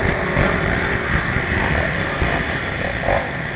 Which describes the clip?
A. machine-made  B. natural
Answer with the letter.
B